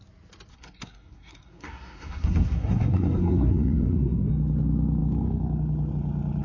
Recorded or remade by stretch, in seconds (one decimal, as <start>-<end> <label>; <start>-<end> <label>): 0.0-0.5 recorded; 0.5-4.3 remade; 4.3-6.4 recorded